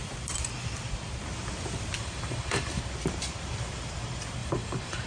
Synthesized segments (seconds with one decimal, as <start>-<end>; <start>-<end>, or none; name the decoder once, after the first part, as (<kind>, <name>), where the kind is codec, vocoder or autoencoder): 2.0-2.8 (vocoder, BigVGAN v2); 4.4-5.1